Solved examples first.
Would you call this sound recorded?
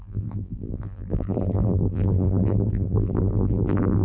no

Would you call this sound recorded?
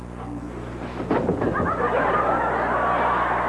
yes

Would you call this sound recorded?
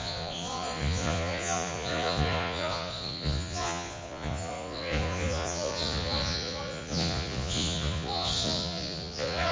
no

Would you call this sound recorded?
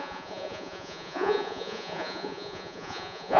no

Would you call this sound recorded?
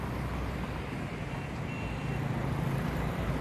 yes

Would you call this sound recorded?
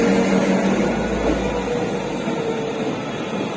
yes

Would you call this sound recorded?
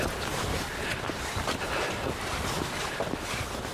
yes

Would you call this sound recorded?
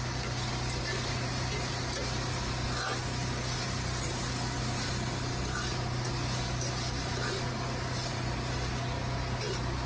yes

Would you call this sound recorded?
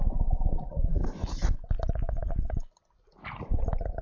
yes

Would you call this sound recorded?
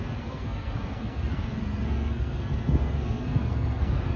no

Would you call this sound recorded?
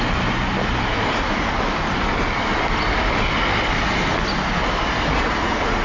yes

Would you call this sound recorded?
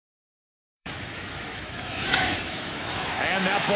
no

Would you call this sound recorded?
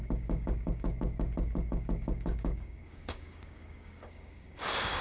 no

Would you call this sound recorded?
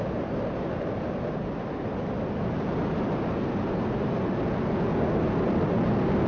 yes